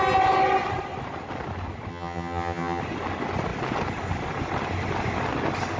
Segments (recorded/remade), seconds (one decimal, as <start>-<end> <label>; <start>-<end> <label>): 0.0-1.9 recorded; 1.9-2.8 remade; 2.8-5.8 recorded